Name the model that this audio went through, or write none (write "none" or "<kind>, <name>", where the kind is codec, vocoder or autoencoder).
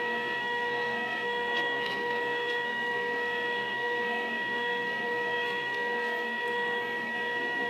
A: codec, SNAC